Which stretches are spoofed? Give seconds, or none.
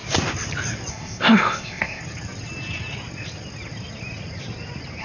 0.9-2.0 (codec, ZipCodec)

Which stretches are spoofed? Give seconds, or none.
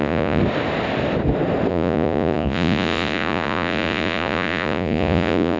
0.0-0.4 (vocoder, Vocos); 1.7-5.6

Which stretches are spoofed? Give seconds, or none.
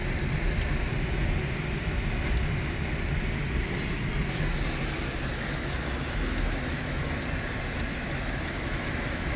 5.3-7.0 (autoencoder, DAC-VAE); 7.9-9.4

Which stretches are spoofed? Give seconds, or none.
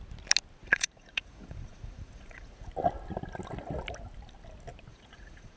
0.6-2.7 (vocoder, Vocos); 4.9-5.6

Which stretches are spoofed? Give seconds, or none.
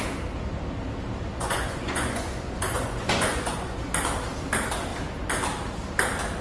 1.3-3.9 (vocoder, Vocos)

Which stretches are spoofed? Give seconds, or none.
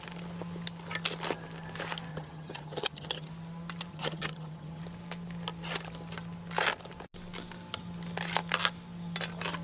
2.1-3.3 (vocoder, HiFi-GAN); 3.9-4.8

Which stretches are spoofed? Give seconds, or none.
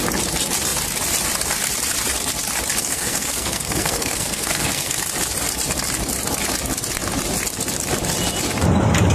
2.8-5.0 (codec, SNAC)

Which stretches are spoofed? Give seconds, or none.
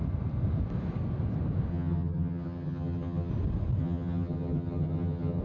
1.7-3.3 (vocoder, HiFi-GAN); 3.8-5.4